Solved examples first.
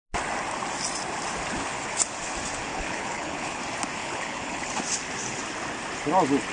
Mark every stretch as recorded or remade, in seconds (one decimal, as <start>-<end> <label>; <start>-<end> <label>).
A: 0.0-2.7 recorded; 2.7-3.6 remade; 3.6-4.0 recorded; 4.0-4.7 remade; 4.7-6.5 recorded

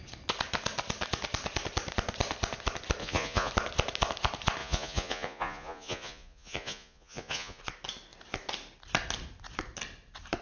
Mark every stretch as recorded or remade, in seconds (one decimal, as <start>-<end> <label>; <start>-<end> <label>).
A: 0.0-3.0 recorded; 3.0-3.5 remade; 3.5-4.6 recorded; 4.6-7.6 remade; 7.6-10.4 recorded

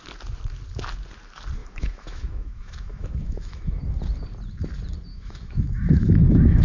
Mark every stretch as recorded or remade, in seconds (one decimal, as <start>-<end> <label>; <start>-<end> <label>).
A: 0.0-1.6 recorded; 1.6-3.8 remade; 3.8-5.1 recorded; 5.1-6.6 remade

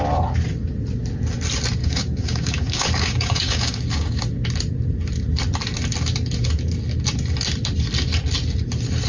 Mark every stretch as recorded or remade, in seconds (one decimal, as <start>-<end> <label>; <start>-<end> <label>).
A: 0.0-1.8 recorded; 1.8-4.2 remade; 4.2-9.1 recorded

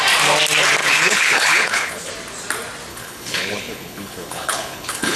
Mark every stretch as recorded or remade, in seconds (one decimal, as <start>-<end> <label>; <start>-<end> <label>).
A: 0.0-0.8 recorded; 0.8-2.1 remade; 2.1-2.9 recorded; 2.9-5.2 remade

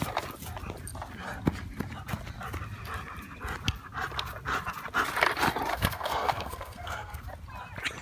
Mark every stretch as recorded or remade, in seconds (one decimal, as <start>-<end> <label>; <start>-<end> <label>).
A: 0.0-5.7 recorded; 5.7-7.2 remade; 7.2-8.0 recorded

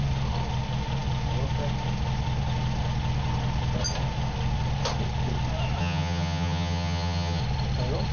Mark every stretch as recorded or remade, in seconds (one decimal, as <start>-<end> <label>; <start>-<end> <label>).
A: 0.0-5.8 recorded; 5.8-7.4 remade; 7.4-8.1 recorded

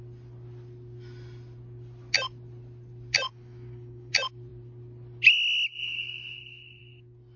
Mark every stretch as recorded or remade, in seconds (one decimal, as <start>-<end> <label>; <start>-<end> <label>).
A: 0.0-3.3 recorded; 3.3-4.1 remade; 4.1-7.4 recorded